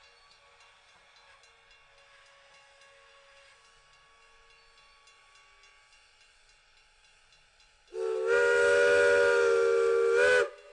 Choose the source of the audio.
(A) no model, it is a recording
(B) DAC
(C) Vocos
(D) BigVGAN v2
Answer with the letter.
A